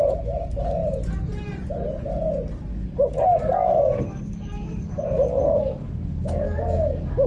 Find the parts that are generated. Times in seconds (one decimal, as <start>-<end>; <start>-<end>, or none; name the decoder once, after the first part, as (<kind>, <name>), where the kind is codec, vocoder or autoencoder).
2.7-7.3 (codec, DAC)